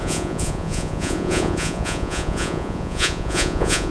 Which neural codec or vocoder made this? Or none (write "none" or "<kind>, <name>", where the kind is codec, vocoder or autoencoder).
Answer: vocoder, Vocos